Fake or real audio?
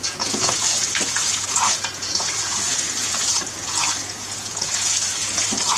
fake